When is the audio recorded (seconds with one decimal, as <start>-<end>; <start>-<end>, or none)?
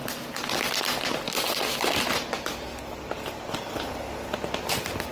0.0-5.1